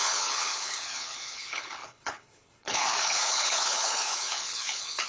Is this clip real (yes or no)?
no